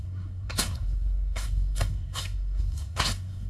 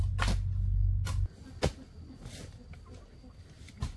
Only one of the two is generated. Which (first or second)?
first